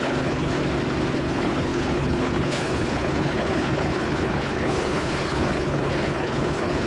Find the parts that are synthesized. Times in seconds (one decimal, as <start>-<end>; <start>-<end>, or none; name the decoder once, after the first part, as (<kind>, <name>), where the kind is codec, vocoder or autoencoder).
0.0-0.6 (codec, HILCodec); 1.1-6.9